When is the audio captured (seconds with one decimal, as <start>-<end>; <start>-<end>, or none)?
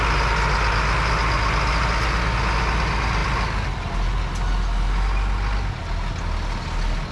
0.0-7.1